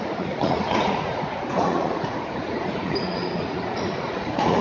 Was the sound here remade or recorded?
remade